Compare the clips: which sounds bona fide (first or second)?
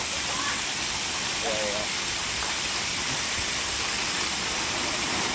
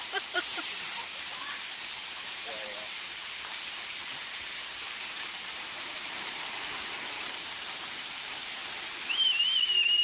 first